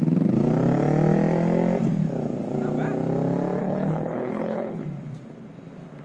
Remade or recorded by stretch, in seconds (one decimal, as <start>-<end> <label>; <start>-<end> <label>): 0.0-3.6 recorded; 3.6-4.8 remade; 4.8-6.0 recorded